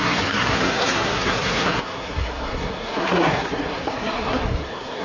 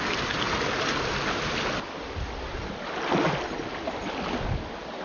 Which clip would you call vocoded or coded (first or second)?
first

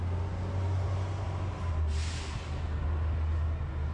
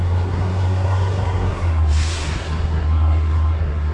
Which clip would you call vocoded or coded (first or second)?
second